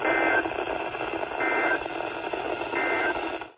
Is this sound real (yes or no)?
yes